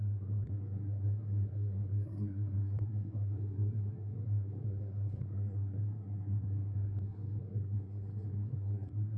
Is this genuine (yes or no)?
no